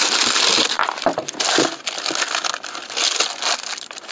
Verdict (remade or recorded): recorded